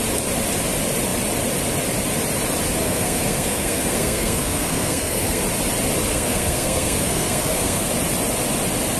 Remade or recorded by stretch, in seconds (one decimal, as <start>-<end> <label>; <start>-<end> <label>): 0.0-2.8 recorded; 2.8-5.4 remade; 5.4-6.1 recorded; 6.1-7.9 remade; 7.9-9.0 recorded

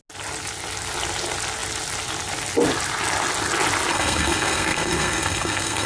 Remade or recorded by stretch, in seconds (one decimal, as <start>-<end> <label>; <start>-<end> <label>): 0.0-3.9 recorded; 3.9-5.9 remade

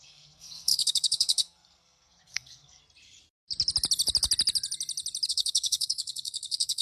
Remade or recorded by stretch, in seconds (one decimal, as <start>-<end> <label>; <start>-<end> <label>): 0.0-2.8 remade; 2.8-5.3 recorded; 5.3-6.8 remade

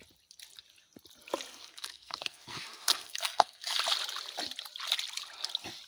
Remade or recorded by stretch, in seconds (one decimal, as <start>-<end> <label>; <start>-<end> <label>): 0.0-1.5 recorded; 1.5-3.8 remade; 3.8-5.9 recorded

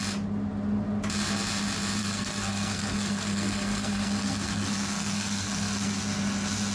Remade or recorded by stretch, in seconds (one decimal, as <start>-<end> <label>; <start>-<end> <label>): 0.0-2.0 recorded; 2.0-6.0 remade; 6.0-6.7 recorded

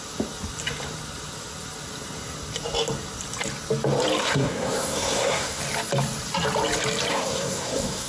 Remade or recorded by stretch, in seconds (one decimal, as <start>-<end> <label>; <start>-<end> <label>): 0.0-4.2 recorded; 4.2-5.6 remade; 5.6-7.1 recorded; 7.1-8.1 remade